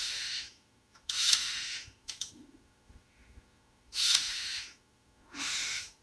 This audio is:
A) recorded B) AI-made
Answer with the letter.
B